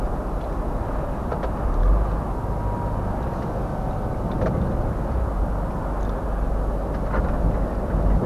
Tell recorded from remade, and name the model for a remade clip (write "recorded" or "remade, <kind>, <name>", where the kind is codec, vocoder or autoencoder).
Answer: recorded